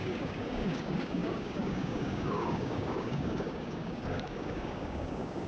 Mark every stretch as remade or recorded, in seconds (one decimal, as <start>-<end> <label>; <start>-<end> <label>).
0.0-5.5 remade